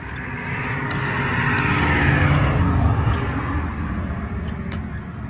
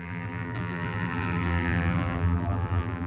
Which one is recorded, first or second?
first